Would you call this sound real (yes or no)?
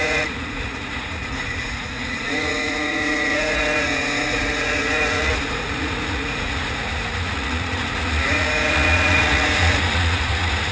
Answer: no